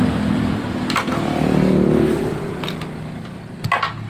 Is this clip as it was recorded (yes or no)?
yes